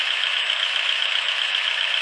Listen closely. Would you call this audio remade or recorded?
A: remade